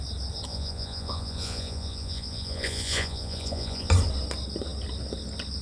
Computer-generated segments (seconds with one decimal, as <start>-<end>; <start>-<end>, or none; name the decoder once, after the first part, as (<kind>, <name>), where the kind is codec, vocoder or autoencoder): 0.5-3.9 (vocoder, Vocos)